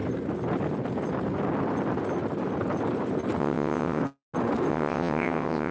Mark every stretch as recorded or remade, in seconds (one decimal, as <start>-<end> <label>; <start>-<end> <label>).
0.0-3.4 recorded; 3.4-4.0 remade; 4.0-4.7 recorded; 4.7-5.7 remade